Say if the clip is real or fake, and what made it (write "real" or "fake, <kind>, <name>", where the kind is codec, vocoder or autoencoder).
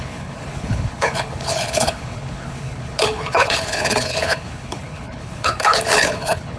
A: fake, codec, HILCodec